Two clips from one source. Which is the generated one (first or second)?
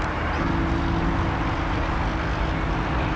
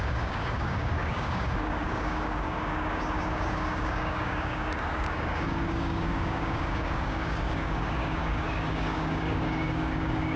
second